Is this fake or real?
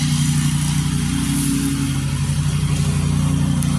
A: real